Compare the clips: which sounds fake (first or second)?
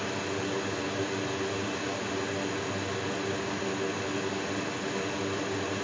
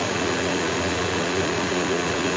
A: second